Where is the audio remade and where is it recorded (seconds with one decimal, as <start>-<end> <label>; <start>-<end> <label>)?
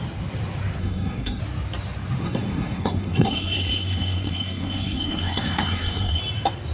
0.0-0.8 recorded; 0.8-1.4 remade; 1.4-2.2 recorded; 2.2-6.2 remade; 6.2-6.7 recorded